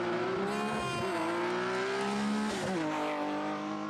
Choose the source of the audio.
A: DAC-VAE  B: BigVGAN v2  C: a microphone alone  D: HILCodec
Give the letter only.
C